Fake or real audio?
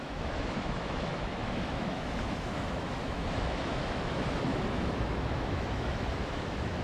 fake